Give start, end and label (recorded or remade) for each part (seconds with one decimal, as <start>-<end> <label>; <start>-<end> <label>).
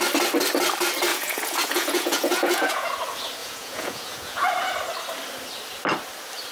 0.0-1.1 recorded; 1.1-2.9 remade; 2.9-3.4 recorded; 3.4-4.5 remade; 4.5-6.5 recorded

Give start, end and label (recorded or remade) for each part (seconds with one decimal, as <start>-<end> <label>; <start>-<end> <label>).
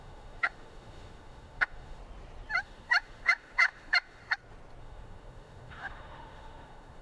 0.0-2.0 remade; 2.0-2.6 recorded; 2.6-4.2 remade; 4.2-4.8 recorded; 4.8-7.0 remade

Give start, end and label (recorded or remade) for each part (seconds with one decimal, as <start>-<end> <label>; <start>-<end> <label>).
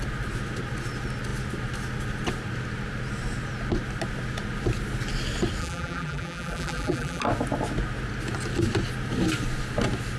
0.0-5.6 recorded; 5.6-7.2 remade; 7.2-10.2 recorded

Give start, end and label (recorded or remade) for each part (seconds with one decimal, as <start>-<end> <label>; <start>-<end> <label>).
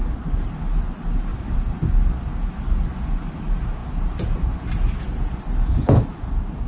0.0-1.3 recorded; 1.3-1.9 remade; 1.9-6.7 recorded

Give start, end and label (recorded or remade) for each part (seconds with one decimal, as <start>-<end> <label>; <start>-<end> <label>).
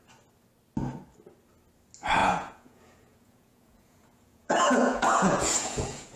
0.0-2.2 recorded; 2.2-6.2 remade